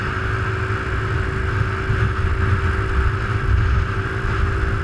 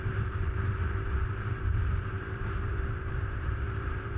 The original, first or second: first